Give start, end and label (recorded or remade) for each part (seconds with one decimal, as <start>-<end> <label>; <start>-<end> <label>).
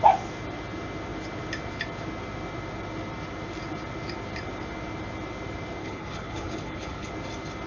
0.0-5.8 recorded; 5.8-7.1 remade; 7.1-7.7 recorded